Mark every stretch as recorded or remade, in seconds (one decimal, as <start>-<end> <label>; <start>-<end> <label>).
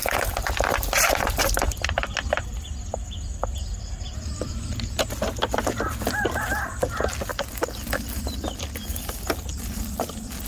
0.0-4.7 remade; 4.7-7.3 recorded; 7.3-10.0 remade; 10.0-10.5 recorded